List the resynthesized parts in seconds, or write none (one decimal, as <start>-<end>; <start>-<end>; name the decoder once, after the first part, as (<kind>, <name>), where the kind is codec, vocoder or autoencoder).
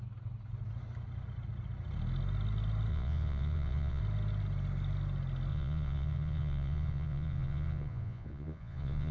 2.9-4.0 (vocoder, Vocos); 5.5-9.1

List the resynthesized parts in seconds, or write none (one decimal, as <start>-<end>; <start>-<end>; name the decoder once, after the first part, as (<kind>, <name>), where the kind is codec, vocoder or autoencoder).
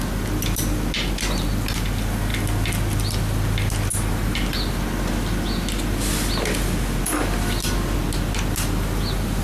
none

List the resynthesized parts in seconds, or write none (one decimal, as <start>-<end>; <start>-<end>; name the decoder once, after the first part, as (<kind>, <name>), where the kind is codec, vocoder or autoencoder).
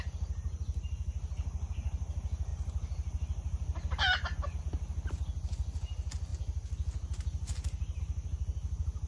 none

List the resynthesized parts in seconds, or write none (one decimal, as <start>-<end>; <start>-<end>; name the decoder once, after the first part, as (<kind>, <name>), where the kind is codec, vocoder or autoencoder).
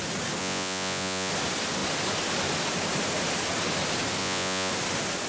0.4-1.3 (vocoder, Vocos); 4.2-4.7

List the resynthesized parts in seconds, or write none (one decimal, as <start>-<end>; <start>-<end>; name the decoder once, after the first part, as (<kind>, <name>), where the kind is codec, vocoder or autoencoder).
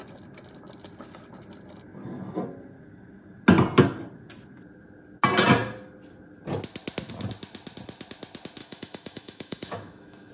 8.6-10.3 (autoencoder, DAC-VAE)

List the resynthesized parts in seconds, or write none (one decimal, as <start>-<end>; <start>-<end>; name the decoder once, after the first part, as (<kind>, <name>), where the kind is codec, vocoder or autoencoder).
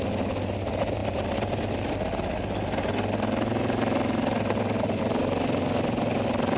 none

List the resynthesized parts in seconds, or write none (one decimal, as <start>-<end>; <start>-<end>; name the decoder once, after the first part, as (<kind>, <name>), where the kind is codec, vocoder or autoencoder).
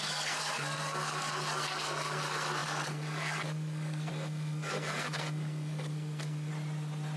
0.0-6.5 (codec, SNAC)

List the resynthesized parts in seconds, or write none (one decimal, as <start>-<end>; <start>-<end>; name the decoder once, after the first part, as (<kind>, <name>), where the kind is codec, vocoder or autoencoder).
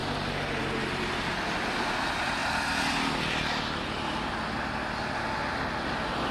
none